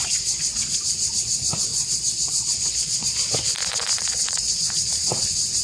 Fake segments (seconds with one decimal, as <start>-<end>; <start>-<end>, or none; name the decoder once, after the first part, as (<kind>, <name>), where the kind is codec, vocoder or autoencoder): 0.0-0.8 (vocoder, Vocos); 1.7-3.1; 4.0-4.5